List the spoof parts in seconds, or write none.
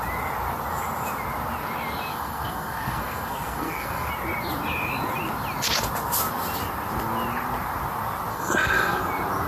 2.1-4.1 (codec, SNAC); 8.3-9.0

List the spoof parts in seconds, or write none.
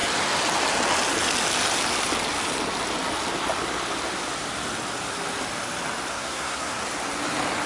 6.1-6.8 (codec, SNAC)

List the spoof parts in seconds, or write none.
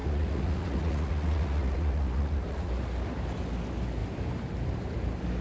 0.0-2.7 (vocoder, Vocos)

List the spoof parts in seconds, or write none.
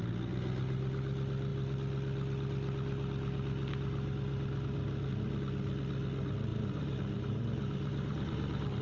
6.5-8.8 (vocoder, BigVGAN v2)